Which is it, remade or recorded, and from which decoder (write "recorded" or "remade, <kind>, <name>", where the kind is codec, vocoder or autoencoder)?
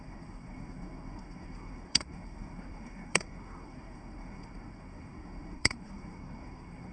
remade, codec, SNAC